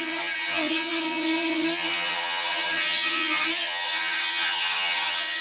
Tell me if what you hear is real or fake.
fake